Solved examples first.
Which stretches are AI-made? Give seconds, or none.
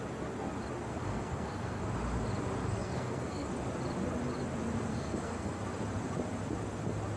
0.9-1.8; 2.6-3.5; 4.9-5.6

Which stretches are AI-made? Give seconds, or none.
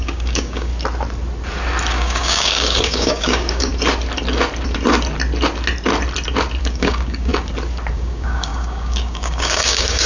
0.0-0.7; 1.9-3.7; 6.6-7.3; 7.9-10.1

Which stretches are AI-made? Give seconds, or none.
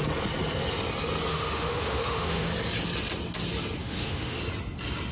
1.3-2.5; 3.8-4.4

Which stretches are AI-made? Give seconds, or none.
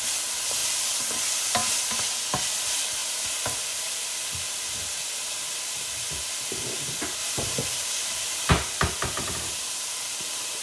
0.6-1.2; 7.2-8.5